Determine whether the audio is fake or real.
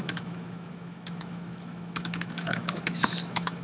fake